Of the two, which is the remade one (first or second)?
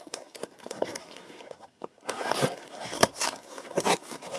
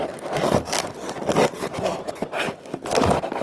first